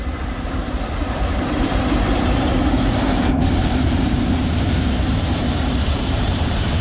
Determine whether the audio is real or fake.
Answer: fake